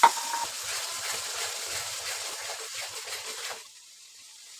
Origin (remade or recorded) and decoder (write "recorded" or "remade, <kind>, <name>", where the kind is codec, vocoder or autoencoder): remade, vocoder, BigVGAN v2